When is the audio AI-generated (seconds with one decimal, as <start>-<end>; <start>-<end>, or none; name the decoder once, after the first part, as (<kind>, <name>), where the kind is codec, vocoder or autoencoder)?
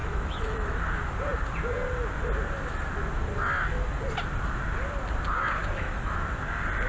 0.0-0.8 (autoencoder, DAC-VAE); 5.6-6.2